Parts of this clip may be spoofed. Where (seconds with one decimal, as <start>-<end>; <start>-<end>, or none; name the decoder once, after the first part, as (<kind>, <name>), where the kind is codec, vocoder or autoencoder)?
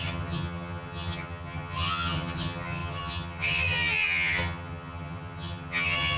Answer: 0.0-6.2 (vocoder, HiFi-GAN)